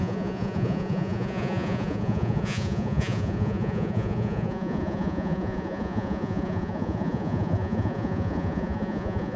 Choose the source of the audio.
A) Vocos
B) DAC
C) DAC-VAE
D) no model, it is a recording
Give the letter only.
A